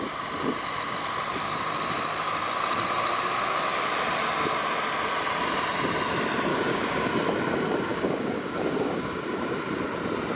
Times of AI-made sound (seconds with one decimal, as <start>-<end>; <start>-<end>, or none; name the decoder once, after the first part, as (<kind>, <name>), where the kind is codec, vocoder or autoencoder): 6.5-7.1 (codec, DAC); 7.9-9.2